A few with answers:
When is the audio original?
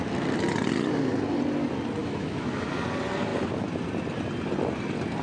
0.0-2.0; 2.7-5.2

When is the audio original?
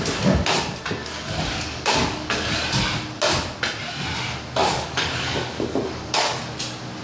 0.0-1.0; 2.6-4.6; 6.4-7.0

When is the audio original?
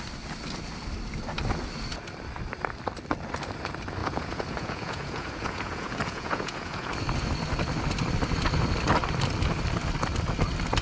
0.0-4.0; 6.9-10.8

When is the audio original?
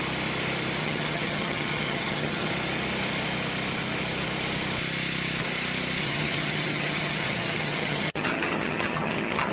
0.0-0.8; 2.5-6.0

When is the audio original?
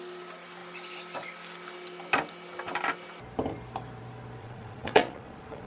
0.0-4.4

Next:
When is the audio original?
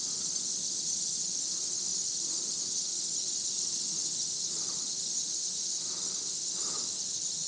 none